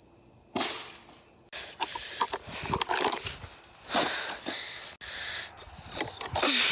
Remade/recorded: recorded